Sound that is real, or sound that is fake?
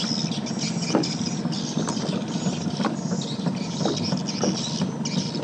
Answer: real